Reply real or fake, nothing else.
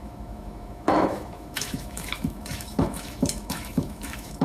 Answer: fake